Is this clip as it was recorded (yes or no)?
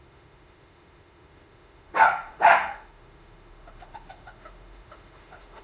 no